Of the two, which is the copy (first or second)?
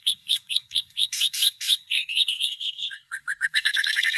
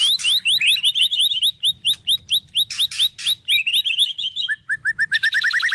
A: first